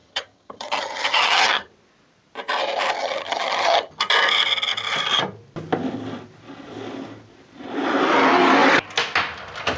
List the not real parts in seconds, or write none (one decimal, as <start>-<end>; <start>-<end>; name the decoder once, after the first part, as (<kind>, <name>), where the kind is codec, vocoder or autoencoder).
0.0-1.7 (vocoder, HiFi-GAN); 3.0-4.0